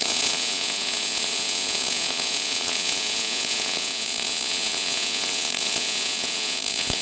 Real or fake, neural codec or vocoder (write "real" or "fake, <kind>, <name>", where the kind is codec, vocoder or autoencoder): fake, vocoder, Vocos